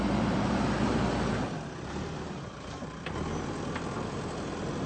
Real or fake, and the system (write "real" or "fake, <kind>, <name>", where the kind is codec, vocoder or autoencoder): real